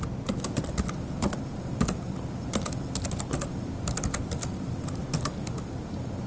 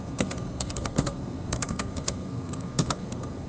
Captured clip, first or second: first